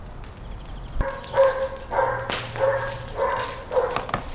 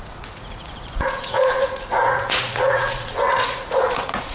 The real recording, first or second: first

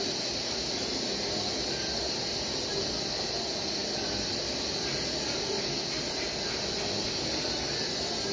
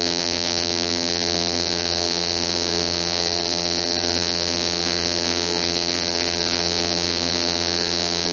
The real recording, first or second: first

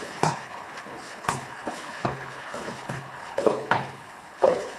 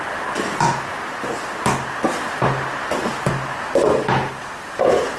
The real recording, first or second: second